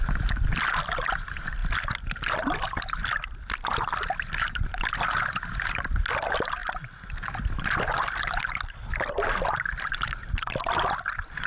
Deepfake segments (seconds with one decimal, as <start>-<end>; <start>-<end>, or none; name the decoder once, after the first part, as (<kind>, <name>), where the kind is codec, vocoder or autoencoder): none